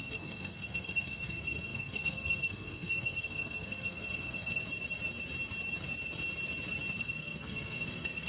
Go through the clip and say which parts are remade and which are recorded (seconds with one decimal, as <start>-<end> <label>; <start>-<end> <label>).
0.0-4.6 remade; 4.6-7.0 recorded; 7.0-8.3 remade